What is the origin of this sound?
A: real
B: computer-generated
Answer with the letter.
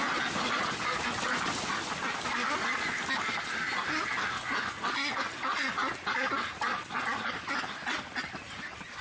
A